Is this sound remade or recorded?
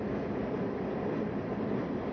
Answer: remade